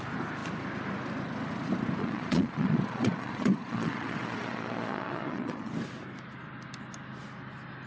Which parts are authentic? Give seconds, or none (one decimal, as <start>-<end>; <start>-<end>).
0.0-2.0; 5.7-7.9